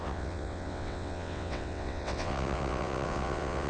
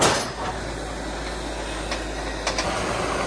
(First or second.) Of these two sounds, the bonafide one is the second